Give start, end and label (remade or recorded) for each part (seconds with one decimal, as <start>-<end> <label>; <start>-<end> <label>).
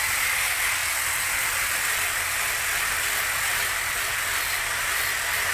0.0-3.5 recorded; 3.5-4.3 remade; 4.3-5.5 recorded